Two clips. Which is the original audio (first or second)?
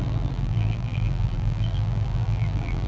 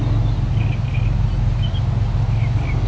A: second